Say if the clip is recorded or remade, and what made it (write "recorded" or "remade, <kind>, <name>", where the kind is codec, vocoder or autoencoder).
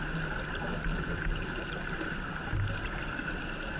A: recorded